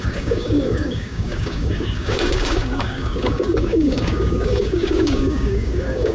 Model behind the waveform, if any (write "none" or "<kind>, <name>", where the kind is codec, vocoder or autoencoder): codec, DAC